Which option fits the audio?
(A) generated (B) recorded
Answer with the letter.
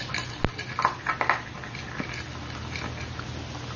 B